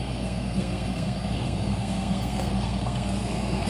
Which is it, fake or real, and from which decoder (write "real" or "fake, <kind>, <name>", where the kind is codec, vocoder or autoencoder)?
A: fake, codec, SNAC